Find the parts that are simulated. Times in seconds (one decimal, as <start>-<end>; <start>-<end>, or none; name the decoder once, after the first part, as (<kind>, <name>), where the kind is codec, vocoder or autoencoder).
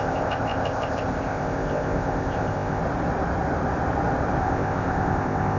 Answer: 0.0-2.8 (codec, ZipCodec); 4.4-5.6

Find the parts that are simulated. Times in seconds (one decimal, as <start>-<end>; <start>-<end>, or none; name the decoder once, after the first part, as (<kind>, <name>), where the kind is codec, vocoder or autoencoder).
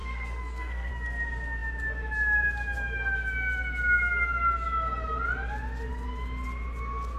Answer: 0.0-0.9 (codec, SNAC)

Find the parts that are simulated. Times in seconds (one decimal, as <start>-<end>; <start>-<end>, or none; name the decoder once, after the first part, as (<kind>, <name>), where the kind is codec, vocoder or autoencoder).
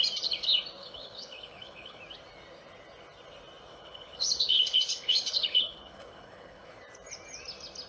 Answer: 0.8-2.0 (codec, HILCodec); 3.7-6.8